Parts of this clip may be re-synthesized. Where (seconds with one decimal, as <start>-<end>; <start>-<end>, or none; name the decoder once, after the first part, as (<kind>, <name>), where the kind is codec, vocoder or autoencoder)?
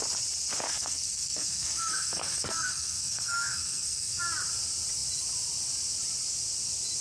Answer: 0.7-4.2 (codec, SNAC)